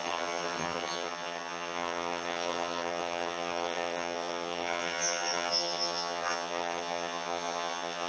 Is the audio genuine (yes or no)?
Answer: no